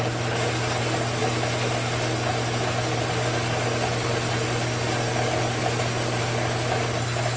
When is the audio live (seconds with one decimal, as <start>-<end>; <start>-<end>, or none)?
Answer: 0.0-7.4